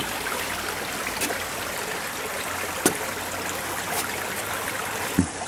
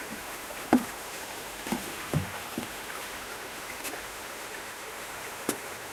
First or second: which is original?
first